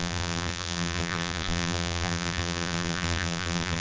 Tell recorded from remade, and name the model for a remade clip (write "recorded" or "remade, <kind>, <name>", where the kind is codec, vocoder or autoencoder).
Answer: remade, vocoder, BigVGAN v2